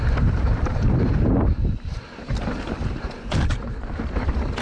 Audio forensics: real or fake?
fake